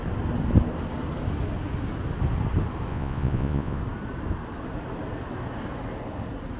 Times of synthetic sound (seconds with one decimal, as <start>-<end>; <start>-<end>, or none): 2.9-3.8